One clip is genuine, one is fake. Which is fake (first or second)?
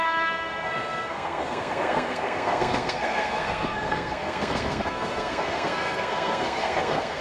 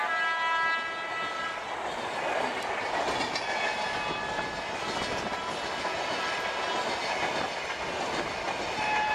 first